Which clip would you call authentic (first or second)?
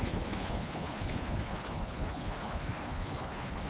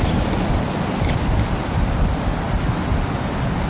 second